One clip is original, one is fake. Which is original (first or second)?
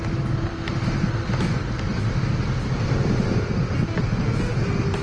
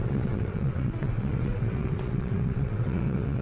first